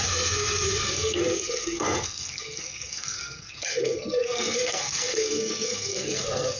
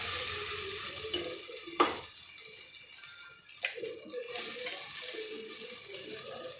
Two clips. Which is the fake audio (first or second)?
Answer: first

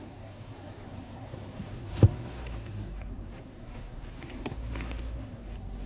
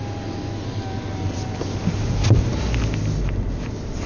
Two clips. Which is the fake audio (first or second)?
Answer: first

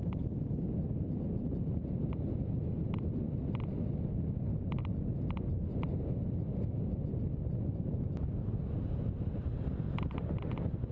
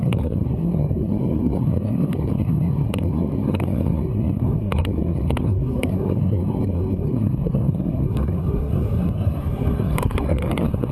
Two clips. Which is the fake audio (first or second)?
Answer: second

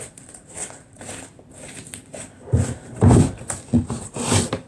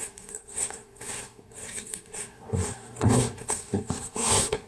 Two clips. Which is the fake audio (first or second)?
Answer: second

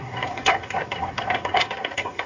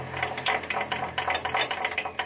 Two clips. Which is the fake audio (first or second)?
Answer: first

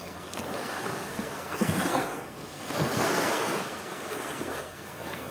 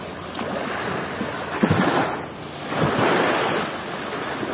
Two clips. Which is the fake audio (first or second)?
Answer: first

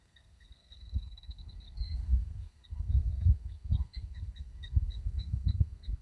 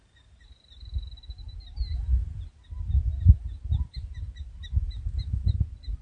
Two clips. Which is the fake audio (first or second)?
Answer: first